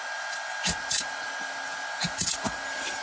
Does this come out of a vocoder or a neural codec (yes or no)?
no